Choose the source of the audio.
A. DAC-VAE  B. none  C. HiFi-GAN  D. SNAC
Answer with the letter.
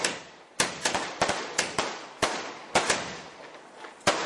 B